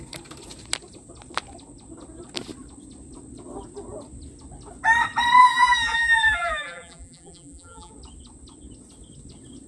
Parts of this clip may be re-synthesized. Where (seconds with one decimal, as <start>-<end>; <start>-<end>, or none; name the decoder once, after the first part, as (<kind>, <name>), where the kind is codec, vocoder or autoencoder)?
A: 5.4-7.9 (vocoder, BigVGAN v2)